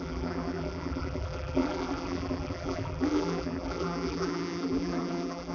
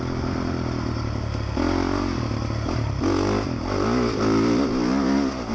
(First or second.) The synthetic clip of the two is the first